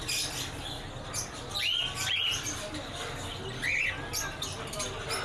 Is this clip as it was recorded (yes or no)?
yes